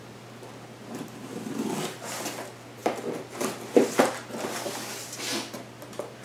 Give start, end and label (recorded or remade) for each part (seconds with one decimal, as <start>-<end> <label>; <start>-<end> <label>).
0.0-6.2 recorded